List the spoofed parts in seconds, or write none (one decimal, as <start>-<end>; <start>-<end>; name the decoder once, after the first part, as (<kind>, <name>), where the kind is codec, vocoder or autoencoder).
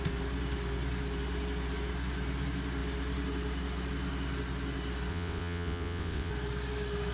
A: 5.1-6.3 (vocoder, WaveNeXt)